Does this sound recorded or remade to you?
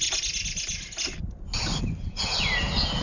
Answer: recorded